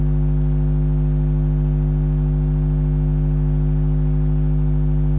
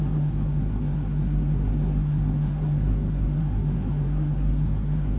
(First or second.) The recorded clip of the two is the first